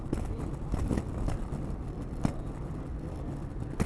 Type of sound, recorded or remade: recorded